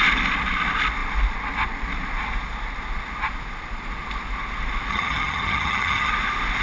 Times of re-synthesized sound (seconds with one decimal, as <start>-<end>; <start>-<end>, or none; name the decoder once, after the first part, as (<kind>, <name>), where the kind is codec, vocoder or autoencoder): 4.9-6.1 (vocoder, HiFi-GAN)